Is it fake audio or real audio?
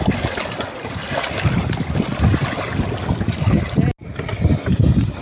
real